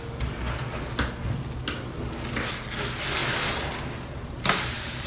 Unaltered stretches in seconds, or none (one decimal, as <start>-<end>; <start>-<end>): 0.0-3.2